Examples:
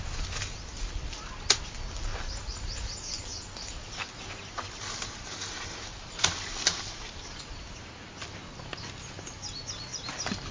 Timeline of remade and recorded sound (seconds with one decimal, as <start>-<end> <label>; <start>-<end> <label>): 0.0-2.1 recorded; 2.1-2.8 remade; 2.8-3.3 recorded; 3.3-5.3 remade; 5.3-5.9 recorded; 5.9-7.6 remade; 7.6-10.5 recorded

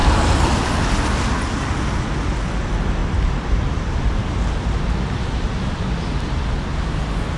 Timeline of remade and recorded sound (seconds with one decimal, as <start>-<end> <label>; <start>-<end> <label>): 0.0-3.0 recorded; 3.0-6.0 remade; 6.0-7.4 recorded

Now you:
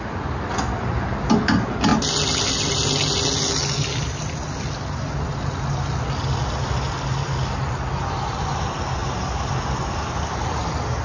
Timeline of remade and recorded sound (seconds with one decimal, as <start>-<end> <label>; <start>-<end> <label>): 0.0-9.0 recorded; 9.0-9.5 remade; 9.5-11.0 recorded

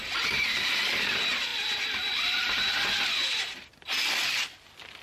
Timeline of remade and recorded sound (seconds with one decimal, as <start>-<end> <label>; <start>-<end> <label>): 0.0-5.0 recorded

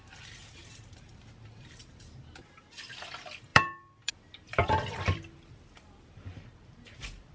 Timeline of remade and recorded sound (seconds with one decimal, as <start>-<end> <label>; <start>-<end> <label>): 0.0-0.4 recorded; 0.4-1.2 remade; 1.2-1.8 recorded; 1.8-2.9 remade; 2.9-3.5 recorded; 3.5-5.0 remade; 5.0-7.3 recorded

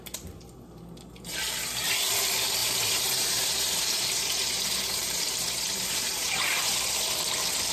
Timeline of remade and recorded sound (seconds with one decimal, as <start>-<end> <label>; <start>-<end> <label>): 0.0-2.6 recorded; 2.6-7.2 remade; 7.2-7.7 recorded